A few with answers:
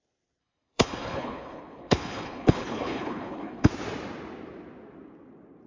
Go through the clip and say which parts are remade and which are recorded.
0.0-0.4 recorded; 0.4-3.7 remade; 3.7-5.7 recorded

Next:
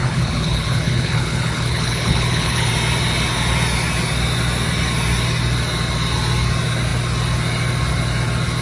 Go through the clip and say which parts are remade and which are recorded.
0.0-2.7 remade; 2.7-8.6 recorded

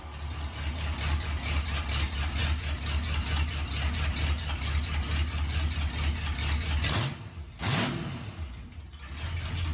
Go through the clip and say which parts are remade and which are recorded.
0.0-9.7 recorded

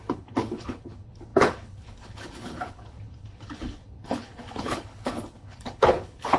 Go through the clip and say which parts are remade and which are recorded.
0.0-6.4 remade

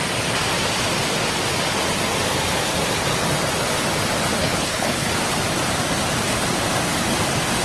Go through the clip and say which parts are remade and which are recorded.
0.0-4.4 recorded; 4.4-5.1 remade; 5.1-7.6 recorded

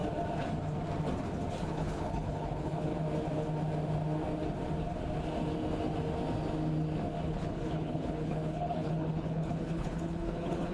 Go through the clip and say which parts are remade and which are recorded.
0.0-1.6 recorded; 1.6-2.9 remade; 2.9-7.3 recorded; 7.3-10.7 remade